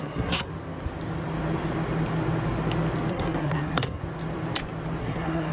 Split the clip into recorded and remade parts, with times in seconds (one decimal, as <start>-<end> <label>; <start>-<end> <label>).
0.0-0.5 remade; 0.5-3.1 recorded; 3.1-4.0 remade; 4.0-5.0 recorded; 5.0-5.5 remade